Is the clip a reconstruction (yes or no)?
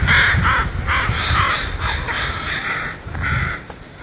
no